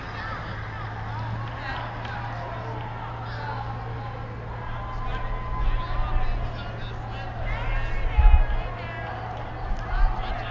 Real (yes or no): yes